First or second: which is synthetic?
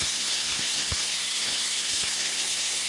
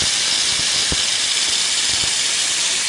first